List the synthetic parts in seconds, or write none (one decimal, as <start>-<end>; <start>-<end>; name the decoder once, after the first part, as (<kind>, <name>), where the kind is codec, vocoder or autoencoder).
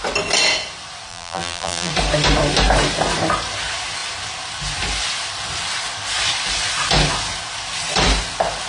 1.1-1.9 (vocoder, BigVGAN v2)